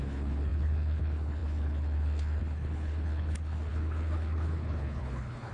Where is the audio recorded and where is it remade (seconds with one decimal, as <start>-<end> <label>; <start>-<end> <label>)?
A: 0.0-5.5 remade